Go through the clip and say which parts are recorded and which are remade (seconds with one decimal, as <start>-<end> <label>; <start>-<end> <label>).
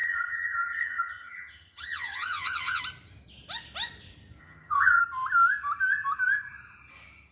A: 0.0-2.8 remade; 2.8-4.4 recorded; 4.4-5.0 remade; 5.0-7.3 recorded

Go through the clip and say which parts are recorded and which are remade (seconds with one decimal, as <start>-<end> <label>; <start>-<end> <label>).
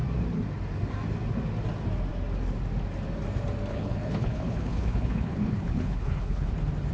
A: 0.0-3.7 recorded; 3.7-6.5 remade; 6.5-6.9 recorded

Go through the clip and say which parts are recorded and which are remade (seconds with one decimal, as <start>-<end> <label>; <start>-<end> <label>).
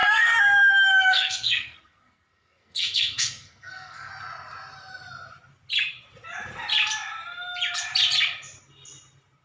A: 0.0-4.1 remade; 4.1-9.4 recorded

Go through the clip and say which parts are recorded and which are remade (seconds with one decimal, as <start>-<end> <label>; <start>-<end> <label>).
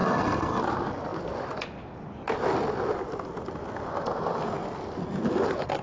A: 0.0-0.6 remade; 0.6-5.8 recorded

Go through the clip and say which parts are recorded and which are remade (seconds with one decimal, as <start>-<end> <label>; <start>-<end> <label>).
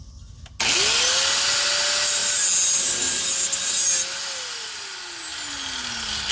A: 0.0-6.3 recorded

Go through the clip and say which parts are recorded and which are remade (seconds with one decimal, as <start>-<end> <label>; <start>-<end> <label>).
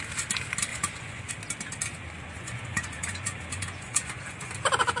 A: 0.0-0.7 recorded; 0.7-1.3 remade; 1.3-1.9 recorded; 1.9-4.5 remade; 4.5-5.0 recorded